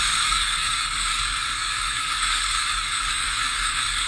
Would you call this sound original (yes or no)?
no